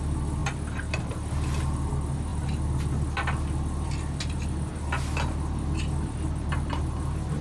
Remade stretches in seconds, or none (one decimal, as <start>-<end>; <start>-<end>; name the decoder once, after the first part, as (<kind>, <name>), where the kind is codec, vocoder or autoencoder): none